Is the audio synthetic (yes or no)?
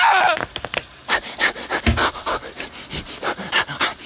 no